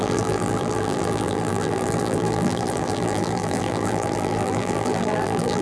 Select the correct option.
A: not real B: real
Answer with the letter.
A